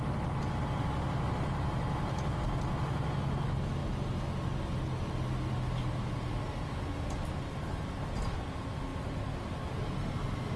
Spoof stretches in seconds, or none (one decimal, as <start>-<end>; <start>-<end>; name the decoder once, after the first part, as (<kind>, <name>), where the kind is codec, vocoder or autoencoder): none